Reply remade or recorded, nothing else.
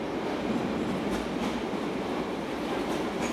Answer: recorded